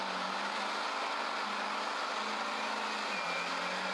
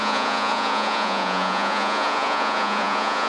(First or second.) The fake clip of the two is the second